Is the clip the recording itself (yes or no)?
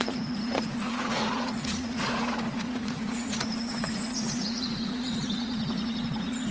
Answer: no